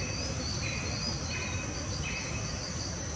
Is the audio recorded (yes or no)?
yes